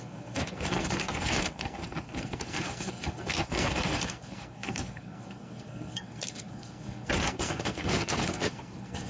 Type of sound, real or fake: fake